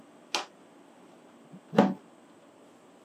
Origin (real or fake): real